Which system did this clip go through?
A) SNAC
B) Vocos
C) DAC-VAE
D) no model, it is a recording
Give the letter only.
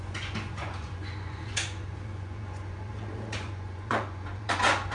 B